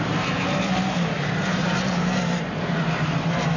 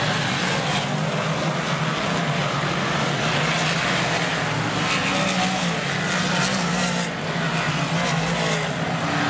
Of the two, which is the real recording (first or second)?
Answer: second